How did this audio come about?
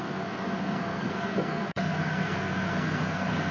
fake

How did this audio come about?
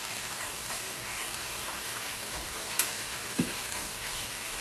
fake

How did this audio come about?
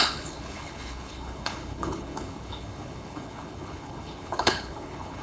fake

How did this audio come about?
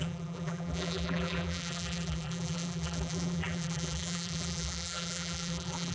fake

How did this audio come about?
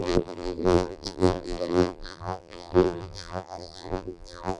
fake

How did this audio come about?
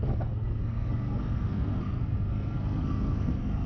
fake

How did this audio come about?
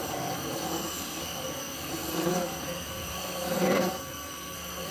fake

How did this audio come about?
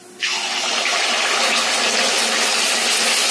real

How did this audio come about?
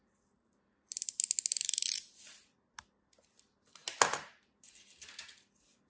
real